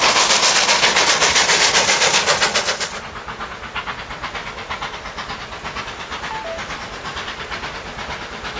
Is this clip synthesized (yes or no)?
no